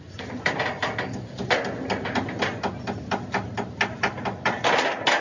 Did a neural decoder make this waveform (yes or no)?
no